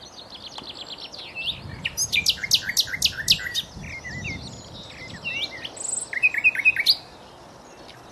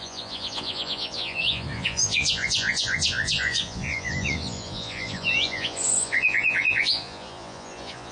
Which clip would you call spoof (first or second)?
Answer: second